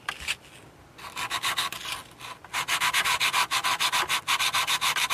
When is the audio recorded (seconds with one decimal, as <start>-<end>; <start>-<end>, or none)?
0.0-5.1